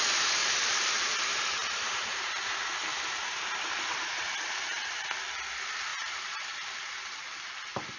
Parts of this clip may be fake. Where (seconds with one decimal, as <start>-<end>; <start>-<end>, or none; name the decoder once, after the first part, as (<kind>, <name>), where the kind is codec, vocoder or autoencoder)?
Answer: 0.4-2.2 (vocoder, BigVGAN v2); 2.9-5.0; 5.9-6.7